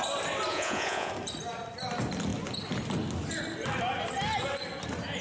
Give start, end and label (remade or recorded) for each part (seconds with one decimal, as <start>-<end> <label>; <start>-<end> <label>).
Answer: 0.0-0.5 recorded; 0.5-1.1 remade; 1.1-5.2 recorded